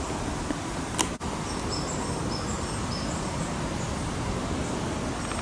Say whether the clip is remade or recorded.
recorded